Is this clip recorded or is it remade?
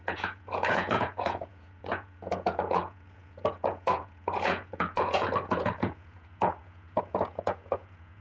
remade